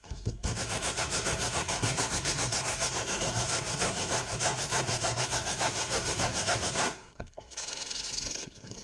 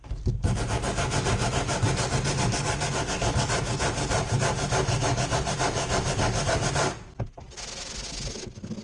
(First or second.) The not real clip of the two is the first